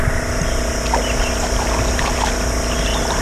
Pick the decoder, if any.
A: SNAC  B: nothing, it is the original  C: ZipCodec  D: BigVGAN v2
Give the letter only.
B